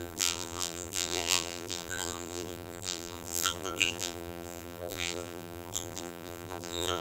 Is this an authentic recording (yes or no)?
no